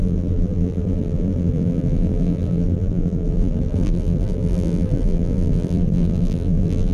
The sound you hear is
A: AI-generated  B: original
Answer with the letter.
A